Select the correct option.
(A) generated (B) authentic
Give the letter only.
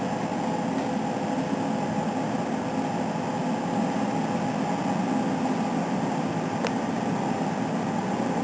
B